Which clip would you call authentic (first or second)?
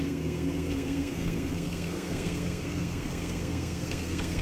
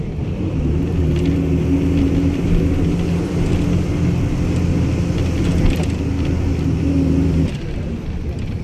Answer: second